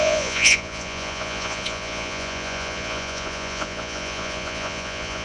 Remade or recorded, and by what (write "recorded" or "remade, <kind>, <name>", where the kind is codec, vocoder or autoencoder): remade, vocoder, Vocos